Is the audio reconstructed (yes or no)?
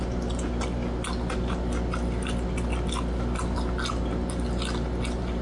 no